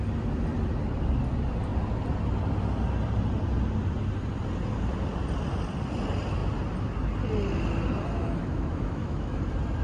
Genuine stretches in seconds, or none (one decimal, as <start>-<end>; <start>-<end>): 0.0-8.4; 9.4-9.8